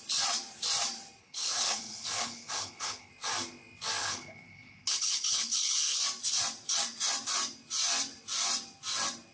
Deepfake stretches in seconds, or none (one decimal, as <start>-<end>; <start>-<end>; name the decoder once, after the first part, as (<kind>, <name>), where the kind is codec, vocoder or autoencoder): 1.2-3.1 (codec, HILCodec); 4.0-6.0